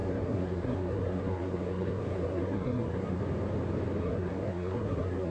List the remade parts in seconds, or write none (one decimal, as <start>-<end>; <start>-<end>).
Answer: 0.0-3.2; 4.0-5.3